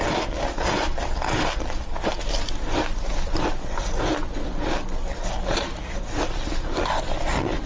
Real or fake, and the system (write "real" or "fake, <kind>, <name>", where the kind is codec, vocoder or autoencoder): real